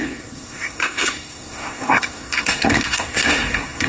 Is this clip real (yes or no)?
no